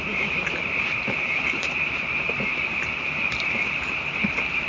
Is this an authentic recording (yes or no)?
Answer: no